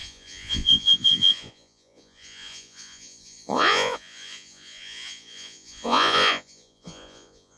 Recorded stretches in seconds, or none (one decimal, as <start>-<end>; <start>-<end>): none